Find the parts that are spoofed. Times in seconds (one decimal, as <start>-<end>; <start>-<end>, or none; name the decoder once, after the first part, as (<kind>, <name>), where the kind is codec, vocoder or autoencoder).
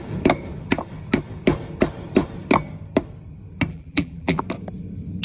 3.7-4.4 (vocoder, BigVGAN v2)